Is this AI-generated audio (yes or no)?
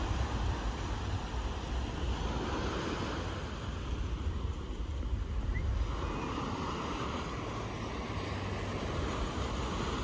no